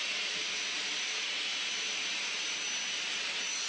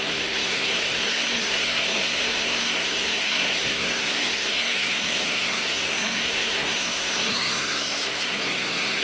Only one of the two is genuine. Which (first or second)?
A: first